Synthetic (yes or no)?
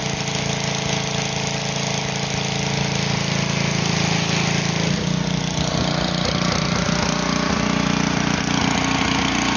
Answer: no